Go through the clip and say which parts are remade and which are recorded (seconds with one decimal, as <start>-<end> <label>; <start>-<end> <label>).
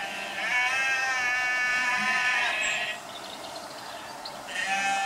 0.0-0.7 remade; 0.7-1.7 recorded; 1.7-4.2 remade; 4.2-5.1 recorded